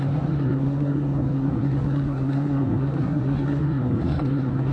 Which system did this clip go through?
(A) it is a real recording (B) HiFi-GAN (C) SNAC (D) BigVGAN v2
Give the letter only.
C